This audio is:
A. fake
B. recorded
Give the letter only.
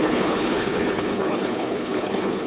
A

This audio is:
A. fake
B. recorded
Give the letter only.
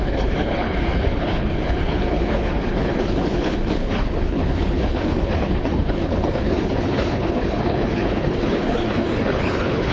A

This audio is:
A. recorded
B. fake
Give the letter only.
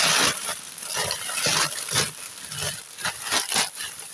A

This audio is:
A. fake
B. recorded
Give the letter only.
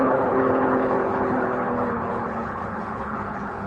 A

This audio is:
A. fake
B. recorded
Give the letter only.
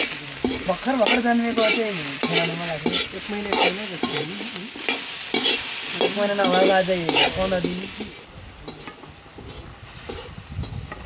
B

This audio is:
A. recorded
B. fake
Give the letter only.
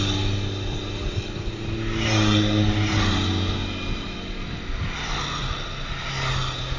A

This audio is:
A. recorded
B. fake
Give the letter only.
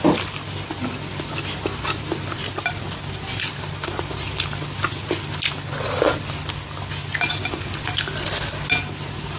A